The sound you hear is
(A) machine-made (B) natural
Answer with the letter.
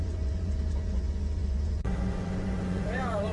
A